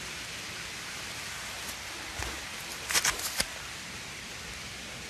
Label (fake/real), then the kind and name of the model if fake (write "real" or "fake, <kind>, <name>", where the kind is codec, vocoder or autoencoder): real